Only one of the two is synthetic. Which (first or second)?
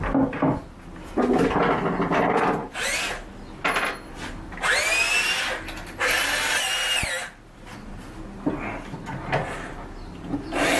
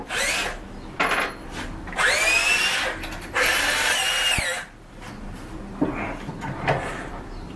second